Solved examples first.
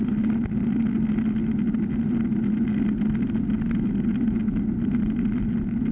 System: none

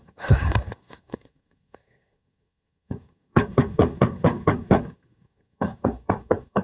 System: codec, SNAC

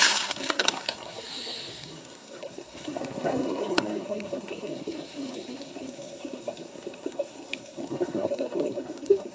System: codec, SNAC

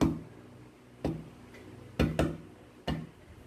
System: none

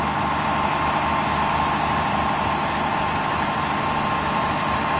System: none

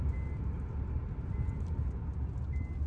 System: none